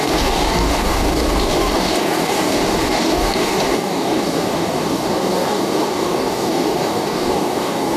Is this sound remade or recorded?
remade